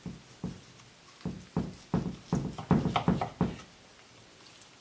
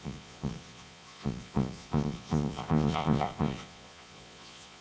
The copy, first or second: second